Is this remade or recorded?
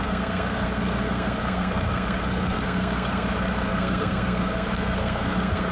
remade